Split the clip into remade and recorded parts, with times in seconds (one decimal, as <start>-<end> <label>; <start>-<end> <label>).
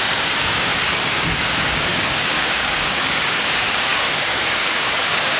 0.0-5.4 remade